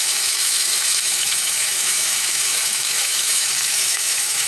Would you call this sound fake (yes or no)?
yes